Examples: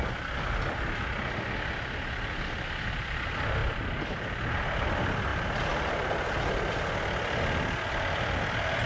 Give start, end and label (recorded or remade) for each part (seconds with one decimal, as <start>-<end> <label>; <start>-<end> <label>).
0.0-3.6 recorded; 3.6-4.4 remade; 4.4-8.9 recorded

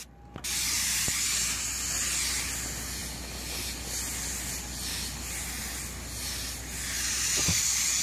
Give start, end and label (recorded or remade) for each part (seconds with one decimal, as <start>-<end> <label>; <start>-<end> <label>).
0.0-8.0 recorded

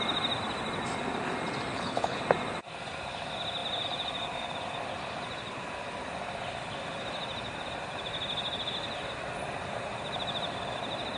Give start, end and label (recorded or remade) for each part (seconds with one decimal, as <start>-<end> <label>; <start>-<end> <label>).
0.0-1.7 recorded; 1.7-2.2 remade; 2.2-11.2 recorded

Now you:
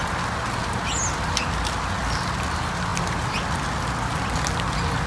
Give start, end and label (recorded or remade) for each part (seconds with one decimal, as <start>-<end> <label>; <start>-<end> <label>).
0.0-5.1 recorded

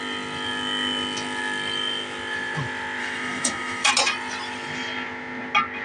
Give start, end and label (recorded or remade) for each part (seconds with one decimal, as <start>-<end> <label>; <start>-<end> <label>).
0.0-3.0 recorded; 3.0-3.9 remade; 3.9-5.8 recorded

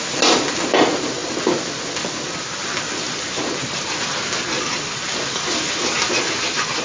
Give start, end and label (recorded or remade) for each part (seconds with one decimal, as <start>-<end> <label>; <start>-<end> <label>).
0.0-6.8 recorded

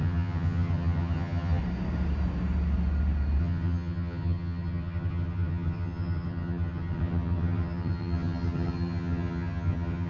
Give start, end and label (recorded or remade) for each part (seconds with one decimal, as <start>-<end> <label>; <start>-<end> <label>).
0.0-1.6 remade; 1.6-3.4 recorded; 3.4-10.1 remade

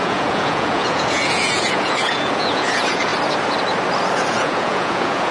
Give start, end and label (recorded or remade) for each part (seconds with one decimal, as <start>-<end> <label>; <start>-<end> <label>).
0.0-3.1 remade; 3.1-4.3 recorded; 4.3-5.3 remade